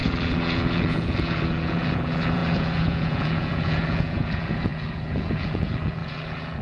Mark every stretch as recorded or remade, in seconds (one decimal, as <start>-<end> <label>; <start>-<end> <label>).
0.0-6.6 remade